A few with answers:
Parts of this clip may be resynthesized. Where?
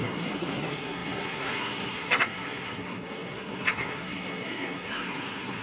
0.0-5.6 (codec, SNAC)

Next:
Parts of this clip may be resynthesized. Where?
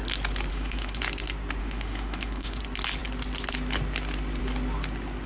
0.5-1.0 (autoencoder, DAC-VAE); 1.6-2.6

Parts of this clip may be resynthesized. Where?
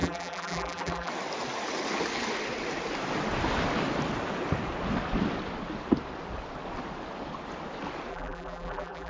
0.0-1.1 (vocoder, BigVGAN v2); 8.1-9.1